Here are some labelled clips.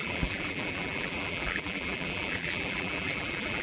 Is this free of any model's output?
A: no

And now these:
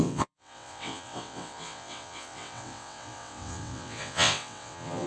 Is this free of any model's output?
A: no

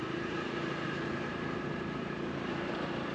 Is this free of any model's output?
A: no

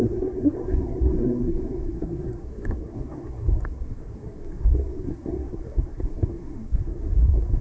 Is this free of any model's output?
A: no